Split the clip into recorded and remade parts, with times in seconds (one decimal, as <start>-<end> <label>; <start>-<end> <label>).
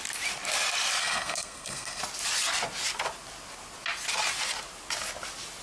0.0-1.0 recorded; 1.0-2.0 remade; 2.0-5.6 recorded